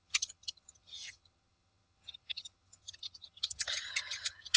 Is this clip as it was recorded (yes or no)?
no